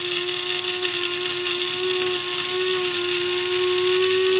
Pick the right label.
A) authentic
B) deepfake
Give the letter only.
A